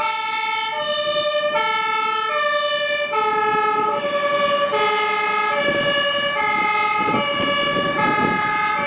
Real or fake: real